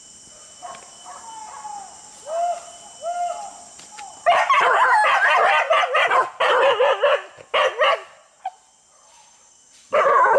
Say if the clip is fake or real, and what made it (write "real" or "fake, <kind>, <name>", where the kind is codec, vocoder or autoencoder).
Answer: real